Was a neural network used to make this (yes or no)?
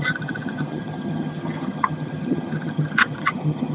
yes